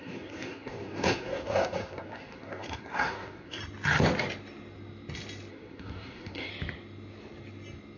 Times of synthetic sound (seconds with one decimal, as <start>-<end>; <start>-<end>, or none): 0.0-3.6; 5.5-6.5